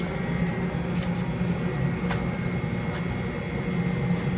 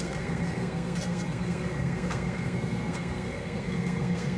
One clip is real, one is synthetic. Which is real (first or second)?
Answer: first